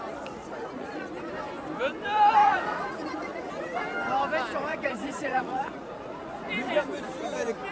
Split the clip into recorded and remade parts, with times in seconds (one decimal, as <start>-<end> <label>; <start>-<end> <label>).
0.0-0.4 recorded; 0.4-1.1 remade; 1.1-2.4 recorded; 2.4-3.5 remade; 3.5-4.7 recorded; 4.7-6.5 remade; 6.5-7.7 recorded